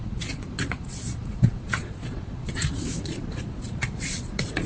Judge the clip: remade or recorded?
remade